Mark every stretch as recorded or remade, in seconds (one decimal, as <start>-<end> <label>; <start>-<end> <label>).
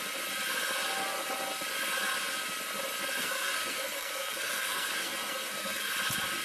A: 0.0-3.2 recorded; 3.2-5.9 remade; 5.9-6.4 recorded